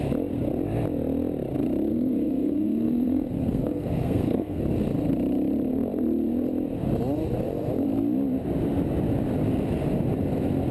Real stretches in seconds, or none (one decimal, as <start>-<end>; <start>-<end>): 0.0-1.9; 4.6-10.7